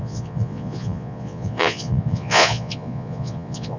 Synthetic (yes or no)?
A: yes